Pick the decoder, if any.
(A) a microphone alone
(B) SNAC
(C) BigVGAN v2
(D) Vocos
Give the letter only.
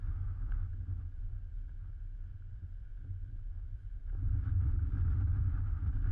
A